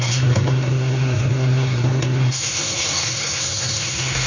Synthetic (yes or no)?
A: yes